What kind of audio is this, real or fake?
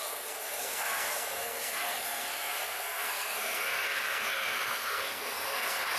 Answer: fake